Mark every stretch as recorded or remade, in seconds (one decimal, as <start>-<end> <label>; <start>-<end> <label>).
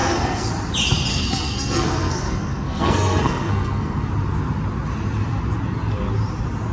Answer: 0.0-0.5 remade; 0.5-1.1 recorded; 1.1-4.1 remade; 4.1-6.7 recorded